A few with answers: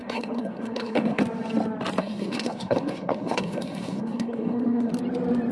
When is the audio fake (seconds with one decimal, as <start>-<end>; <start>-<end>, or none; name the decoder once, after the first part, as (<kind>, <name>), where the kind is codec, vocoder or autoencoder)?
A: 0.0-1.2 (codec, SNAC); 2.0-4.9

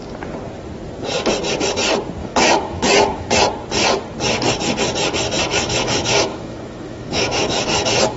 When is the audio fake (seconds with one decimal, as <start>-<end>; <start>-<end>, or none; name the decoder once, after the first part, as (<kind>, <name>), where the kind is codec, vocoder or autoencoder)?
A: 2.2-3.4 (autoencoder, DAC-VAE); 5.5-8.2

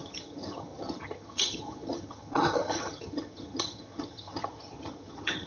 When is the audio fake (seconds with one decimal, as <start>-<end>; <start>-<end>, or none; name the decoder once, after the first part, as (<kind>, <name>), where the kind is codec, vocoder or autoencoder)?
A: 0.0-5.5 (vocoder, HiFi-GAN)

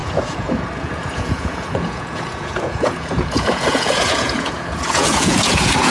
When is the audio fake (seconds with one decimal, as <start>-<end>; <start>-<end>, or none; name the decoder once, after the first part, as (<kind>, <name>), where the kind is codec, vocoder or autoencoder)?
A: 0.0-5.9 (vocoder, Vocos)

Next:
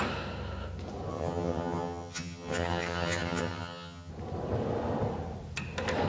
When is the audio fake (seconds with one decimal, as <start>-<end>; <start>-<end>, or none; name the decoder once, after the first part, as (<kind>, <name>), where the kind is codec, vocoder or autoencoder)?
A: 1.1-4.1 (vocoder, HiFi-GAN)